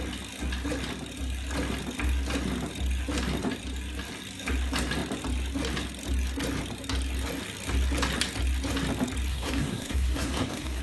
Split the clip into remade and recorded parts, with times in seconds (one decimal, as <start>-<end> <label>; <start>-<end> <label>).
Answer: 0.0-9.3 recorded; 9.3-10.8 remade